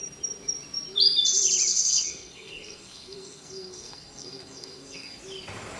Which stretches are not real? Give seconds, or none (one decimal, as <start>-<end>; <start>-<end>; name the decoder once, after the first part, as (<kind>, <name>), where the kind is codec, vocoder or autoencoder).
1.7-5.2 (codec, SNAC)